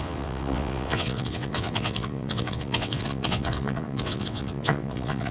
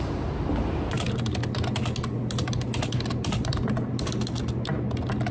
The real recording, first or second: second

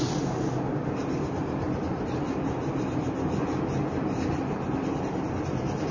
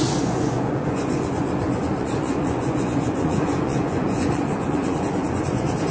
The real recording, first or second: first